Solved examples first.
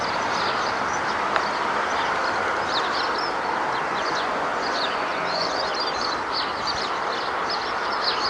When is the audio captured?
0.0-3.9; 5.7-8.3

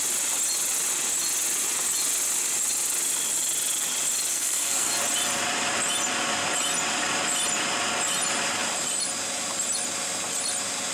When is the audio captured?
0.0-4.3; 4.9-10.9

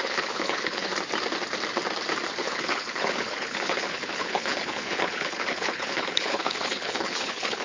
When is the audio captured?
0.9-2.4

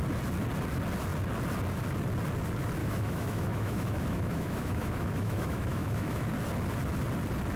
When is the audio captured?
0.0-2.8; 6.3-7.6